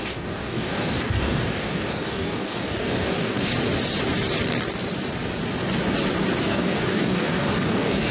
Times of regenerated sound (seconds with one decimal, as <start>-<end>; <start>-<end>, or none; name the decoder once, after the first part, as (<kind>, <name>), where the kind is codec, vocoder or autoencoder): 0.0-3.5 (codec, DAC); 6.4-8.1